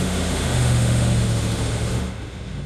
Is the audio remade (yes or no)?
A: yes